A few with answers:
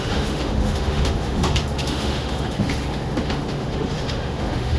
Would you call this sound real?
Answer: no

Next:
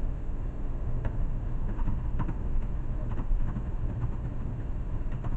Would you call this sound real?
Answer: no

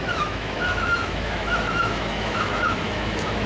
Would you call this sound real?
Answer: no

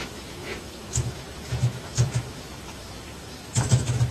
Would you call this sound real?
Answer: no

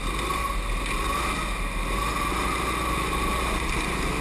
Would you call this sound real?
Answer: yes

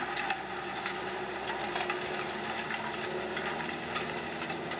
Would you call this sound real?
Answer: yes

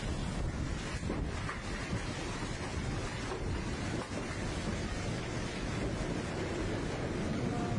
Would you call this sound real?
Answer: yes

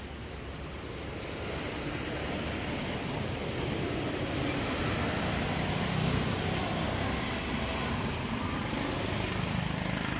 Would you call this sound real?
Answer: yes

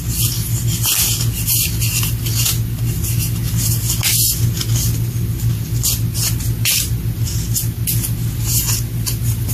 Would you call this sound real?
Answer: yes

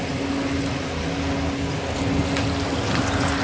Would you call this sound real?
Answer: yes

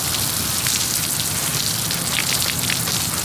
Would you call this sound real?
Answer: yes